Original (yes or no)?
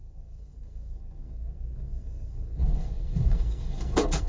no